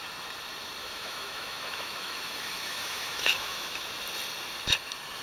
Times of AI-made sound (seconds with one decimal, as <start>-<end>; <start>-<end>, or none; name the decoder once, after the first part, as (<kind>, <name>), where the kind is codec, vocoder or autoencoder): 0.8-3.9 (autoencoder, DAC-VAE)